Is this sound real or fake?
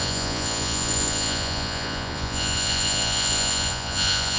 fake